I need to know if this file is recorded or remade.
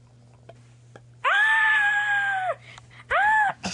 recorded